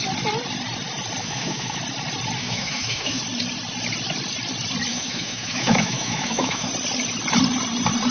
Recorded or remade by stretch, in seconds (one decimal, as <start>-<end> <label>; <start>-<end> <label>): 0.0-1.2 recorded; 1.2-1.8 remade; 1.8-2.4 recorded; 2.4-3.2 remade; 3.2-4.9 recorded; 4.9-6.7 remade; 6.7-8.1 recorded